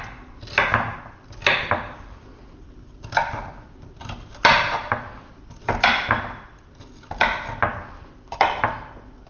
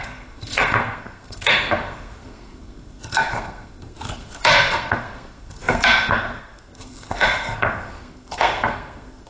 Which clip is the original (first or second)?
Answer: first